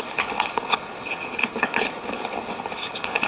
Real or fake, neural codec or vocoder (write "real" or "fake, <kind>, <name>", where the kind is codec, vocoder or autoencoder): fake, codec, HILCodec